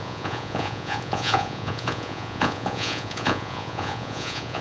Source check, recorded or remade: remade